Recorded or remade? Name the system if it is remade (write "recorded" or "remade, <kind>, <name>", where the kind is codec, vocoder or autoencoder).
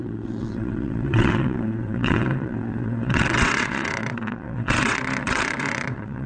remade, vocoder, WaveNeXt